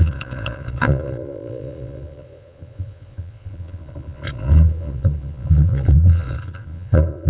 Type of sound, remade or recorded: remade